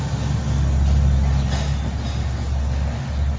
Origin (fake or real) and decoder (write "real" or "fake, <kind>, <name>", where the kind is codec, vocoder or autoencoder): real